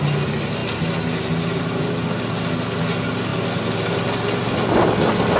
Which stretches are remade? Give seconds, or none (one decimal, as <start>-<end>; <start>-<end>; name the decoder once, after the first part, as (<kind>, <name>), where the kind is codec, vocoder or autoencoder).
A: none